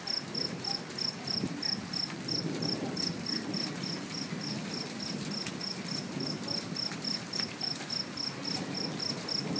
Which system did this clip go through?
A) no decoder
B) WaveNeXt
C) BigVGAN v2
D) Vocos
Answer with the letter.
A